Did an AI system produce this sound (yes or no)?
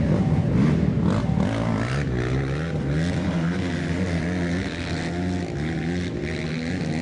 no